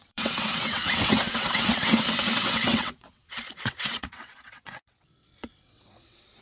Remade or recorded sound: remade